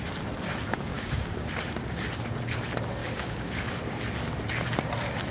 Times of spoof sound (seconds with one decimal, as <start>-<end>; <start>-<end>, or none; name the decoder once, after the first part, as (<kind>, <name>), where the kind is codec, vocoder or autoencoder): 0.9-1.5 (codec, DAC); 3.0-3.8